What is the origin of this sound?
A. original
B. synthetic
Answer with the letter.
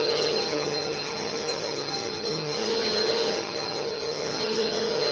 B